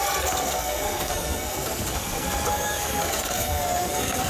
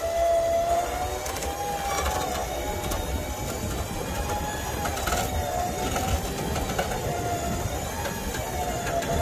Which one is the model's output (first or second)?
first